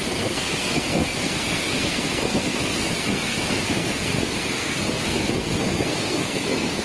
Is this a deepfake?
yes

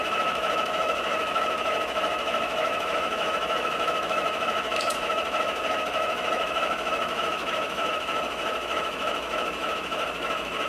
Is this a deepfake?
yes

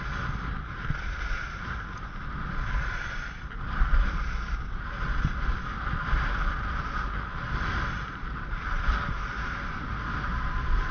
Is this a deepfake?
no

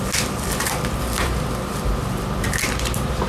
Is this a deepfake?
yes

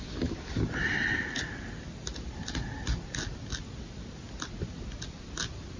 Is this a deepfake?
no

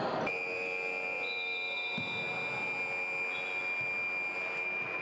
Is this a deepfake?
no